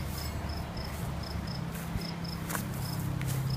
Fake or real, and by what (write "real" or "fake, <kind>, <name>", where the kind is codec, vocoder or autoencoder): real